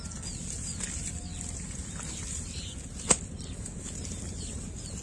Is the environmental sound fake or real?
real